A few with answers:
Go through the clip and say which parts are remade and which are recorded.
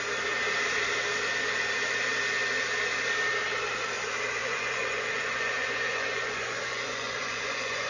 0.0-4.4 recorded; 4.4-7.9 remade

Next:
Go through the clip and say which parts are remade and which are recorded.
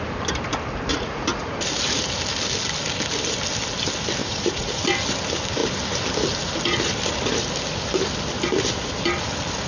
0.0-0.9 recorded; 0.9-1.6 remade; 1.6-4.2 recorded; 4.2-4.8 remade; 4.8-9.7 recorded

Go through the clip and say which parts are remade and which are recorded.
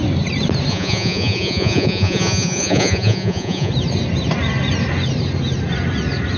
0.0-0.7 recorded; 0.7-3.7 remade; 3.7-6.4 recorded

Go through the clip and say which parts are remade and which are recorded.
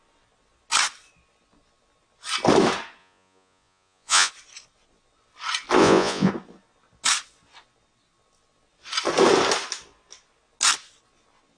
0.0-3.0 recorded; 3.0-4.3 remade; 4.3-5.8 recorded; 5.8-6.3 remade; 6.3-11.6 recorded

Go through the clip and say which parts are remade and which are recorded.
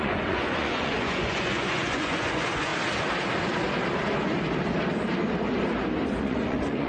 0.0-2.7 remade; 2.7-6.2 recorded; 6.2-6.9 remade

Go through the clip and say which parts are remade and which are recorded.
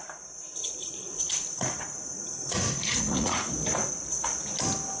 0.0-0.5 recorded; 0.5-3.5 remade; 3.5-5.0 recorded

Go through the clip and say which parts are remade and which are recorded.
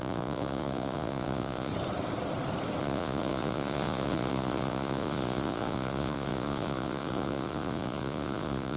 0.0-1.7 remade; 1.7-2.8 recorded; 2.8-8.8 remade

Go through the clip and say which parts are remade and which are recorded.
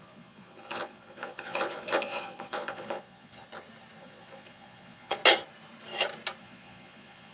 0.0-3.4 remade; 3.4-4.0 recorded; 4.0-5.2 remade; 5.2-6.4 recorded; 6.4-7.3 remade